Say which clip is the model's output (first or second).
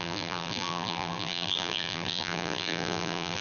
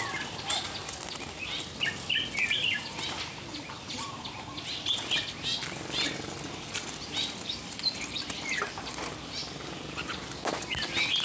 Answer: first